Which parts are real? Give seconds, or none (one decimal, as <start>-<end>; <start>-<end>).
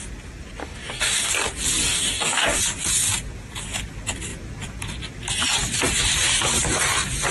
0.0-0.6; 1.3-1.8; 2.6-7.3